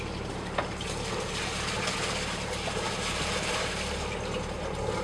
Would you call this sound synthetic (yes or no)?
no